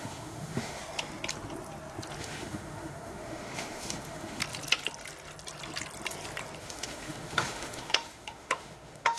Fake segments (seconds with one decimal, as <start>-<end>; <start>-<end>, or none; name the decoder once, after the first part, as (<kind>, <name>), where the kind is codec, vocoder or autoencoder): 0.0-0.8 (autoencoder, DAC-VAE); 2.2-4.4; 6.6-9.2